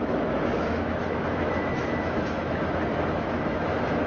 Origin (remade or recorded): remade